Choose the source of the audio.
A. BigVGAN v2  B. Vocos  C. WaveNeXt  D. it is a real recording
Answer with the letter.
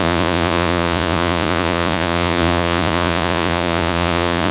B